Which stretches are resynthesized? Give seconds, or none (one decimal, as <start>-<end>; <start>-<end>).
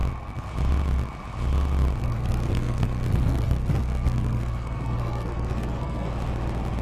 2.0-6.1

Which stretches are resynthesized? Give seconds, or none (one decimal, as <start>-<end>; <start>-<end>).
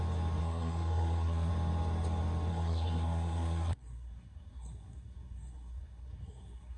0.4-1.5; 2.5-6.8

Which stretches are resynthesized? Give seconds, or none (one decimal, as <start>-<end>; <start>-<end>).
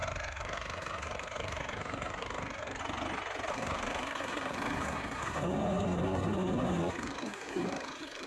0.0-2.8; 3.5-8.3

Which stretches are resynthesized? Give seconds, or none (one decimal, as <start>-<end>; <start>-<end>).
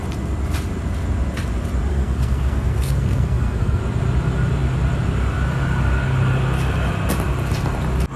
1.9-3.8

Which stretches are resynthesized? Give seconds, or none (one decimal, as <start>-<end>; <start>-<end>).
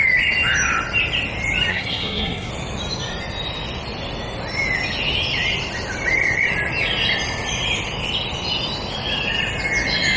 1.7-2.5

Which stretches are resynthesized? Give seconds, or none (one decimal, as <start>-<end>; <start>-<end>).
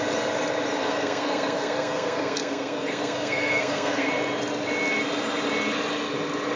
0.8-4.1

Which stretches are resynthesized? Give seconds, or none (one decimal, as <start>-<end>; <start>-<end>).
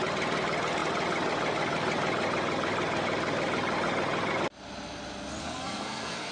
5.4-6.3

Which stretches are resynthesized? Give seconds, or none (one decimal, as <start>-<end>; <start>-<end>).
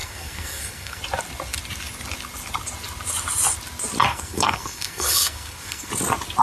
0.0-1.0; 4.1-5.9